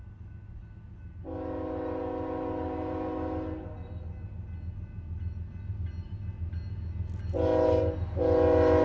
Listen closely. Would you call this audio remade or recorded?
recorded